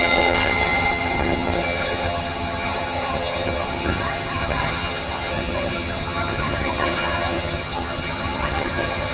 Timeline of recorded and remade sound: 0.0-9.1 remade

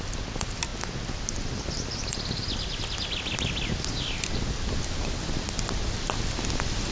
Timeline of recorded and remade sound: 0.0-6.9 recorded

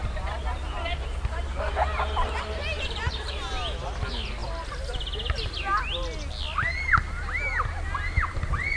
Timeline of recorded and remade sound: 0.0-3.6 remade; 3.6-8.8 recorded

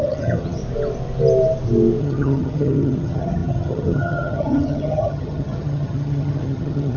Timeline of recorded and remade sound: 0.0-0.6 remade; 0.6-2.0 recorded; 2.0-7.0 remade

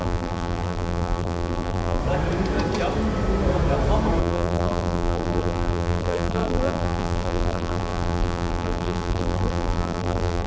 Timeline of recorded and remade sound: 0.0-2.0 remade; 2.0-4.2 recorded; 4.2-10.5 remade

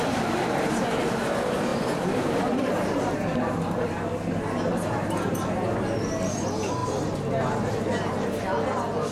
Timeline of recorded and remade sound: 0.0-1.7 recorded; 1.7-3.9 remade; 3.9-4.7 recorded; 4.7-5.4 remade; 5.4-9.1 recorded

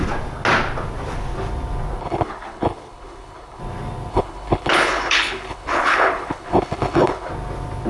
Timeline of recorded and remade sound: 0.0-2.0 recorded; 2.0-3.6 remade; 3.6-4.1 recorded; 4.1-7.3 remade; 7.3-7.9 recorded